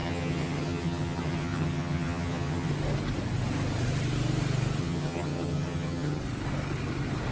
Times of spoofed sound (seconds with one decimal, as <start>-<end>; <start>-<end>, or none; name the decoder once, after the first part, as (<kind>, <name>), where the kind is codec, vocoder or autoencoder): 0.0-2.7 (vocoder, HiFi-GAN); 4.8-6.2

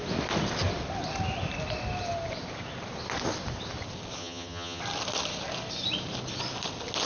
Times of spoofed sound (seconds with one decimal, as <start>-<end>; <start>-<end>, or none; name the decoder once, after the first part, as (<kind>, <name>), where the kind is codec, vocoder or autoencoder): 4.2-4.8 (vocoder, HiFi-GAN)